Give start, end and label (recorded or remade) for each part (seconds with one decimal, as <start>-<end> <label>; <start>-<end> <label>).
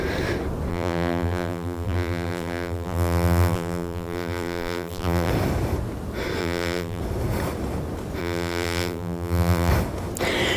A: 0.0-0.7 recorded; 0.7-5.3 remade; 5.3-6.4 recorded; 6.4-7.0 remade; 7.0-8.2 recorded; 8.2-9.7 remade; 9.7-10.6 recorded